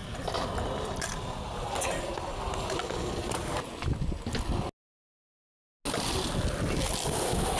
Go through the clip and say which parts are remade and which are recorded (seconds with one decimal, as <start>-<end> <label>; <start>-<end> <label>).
0.0-7.6 recorded